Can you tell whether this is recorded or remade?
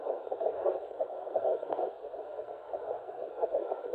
remade